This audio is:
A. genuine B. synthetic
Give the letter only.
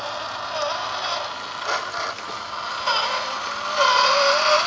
A